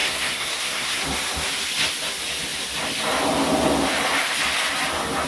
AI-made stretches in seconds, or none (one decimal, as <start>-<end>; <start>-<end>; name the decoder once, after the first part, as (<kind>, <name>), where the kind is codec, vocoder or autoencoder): 0.0-1.0 (codec, SNAC)